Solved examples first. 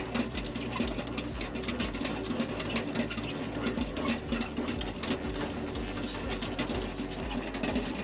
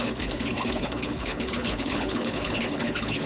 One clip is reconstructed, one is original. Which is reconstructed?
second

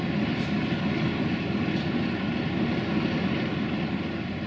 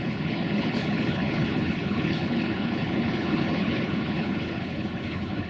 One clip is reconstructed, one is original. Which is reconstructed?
second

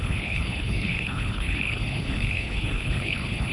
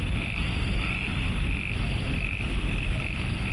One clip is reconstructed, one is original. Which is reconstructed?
first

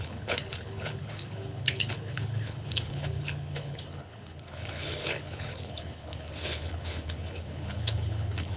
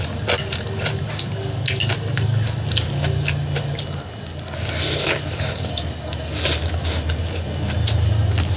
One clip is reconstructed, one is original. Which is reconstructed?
first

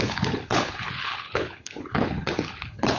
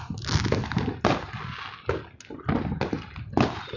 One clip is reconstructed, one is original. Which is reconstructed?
first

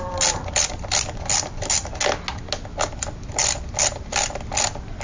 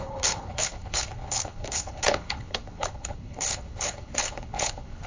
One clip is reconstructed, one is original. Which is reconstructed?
second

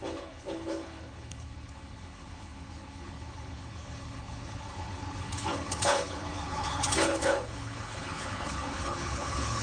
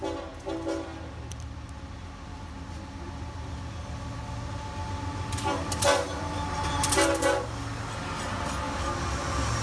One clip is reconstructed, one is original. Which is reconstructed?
first